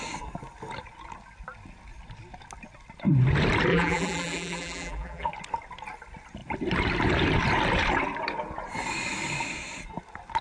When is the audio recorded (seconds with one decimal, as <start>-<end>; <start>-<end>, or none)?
0.0-3.7; 5.3-10.4